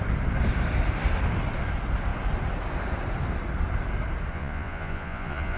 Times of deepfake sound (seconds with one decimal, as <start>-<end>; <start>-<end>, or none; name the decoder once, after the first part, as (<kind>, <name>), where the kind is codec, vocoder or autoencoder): 4.3-5.6 (vocoder, Vocos)